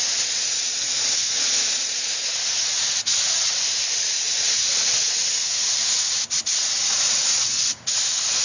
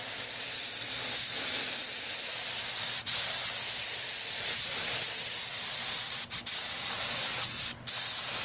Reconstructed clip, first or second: first